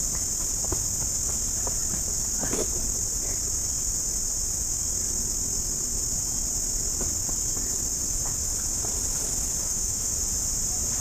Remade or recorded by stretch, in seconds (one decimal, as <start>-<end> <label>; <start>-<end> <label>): 0.0-9.6 recorded; 9.6-10.1 remade; 10.1-11.0 recorded